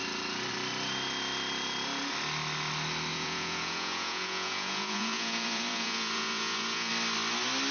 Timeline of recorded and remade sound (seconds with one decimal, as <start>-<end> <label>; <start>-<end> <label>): 0.0-3.1 recorded; 3.1-6.9 remade; 6.9-7.7 recorded